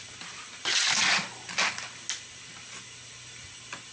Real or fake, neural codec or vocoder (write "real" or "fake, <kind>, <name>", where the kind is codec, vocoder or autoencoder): real